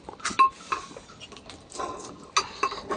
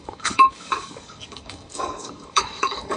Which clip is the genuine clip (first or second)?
first